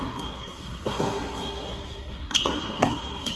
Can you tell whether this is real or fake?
fake